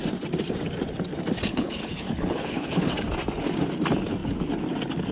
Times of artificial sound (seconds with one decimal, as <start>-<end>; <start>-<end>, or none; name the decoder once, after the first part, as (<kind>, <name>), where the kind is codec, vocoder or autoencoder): 1.5-2.9 (codec, HILCodec)